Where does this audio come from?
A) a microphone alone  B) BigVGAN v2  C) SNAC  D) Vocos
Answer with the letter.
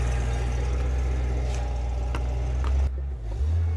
A